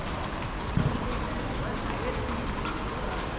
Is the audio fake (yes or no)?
no